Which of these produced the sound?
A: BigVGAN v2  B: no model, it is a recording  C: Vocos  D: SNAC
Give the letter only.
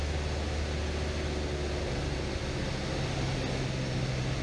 B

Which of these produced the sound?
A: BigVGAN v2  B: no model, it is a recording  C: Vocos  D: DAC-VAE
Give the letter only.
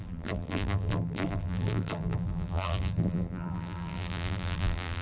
A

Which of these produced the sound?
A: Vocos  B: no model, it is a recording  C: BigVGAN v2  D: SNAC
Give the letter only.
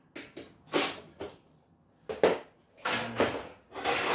B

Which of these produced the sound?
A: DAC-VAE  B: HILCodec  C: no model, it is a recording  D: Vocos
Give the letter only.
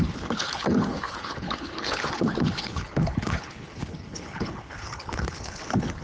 B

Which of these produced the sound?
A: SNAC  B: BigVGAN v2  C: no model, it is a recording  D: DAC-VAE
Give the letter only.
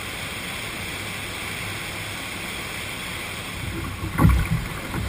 C